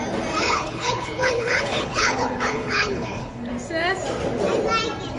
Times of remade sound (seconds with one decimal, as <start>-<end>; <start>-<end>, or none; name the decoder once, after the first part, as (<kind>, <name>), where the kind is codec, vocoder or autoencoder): 0.4-3.5 (codec, HILCodec)